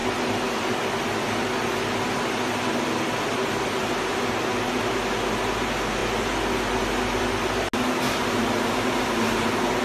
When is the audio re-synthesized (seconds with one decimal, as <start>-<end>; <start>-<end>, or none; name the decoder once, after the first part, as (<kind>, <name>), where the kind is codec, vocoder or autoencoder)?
none